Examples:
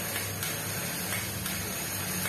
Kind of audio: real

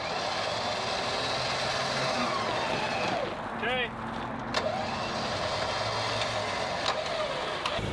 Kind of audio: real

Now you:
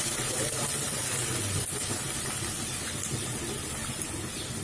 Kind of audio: real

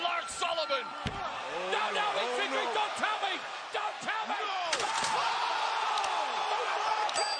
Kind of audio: real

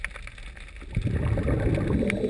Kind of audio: real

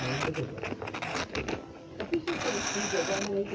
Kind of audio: real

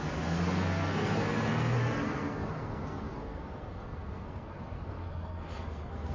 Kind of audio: fake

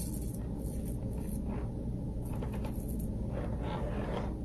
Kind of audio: real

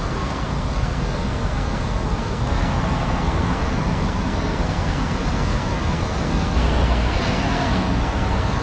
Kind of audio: fake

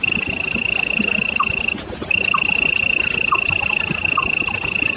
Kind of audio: real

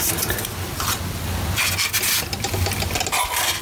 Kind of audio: real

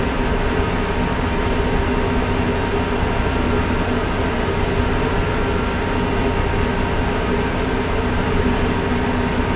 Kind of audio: real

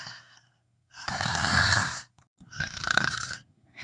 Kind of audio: fake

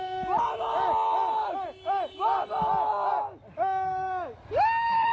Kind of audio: real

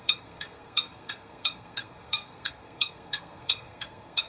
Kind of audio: fake